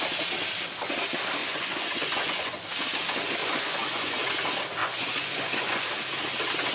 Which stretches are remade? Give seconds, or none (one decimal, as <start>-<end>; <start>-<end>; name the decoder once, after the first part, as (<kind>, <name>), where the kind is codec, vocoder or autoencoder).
1.4-2.6 (vocoder, Vocos); 3.4-4.2; 4.8-5.9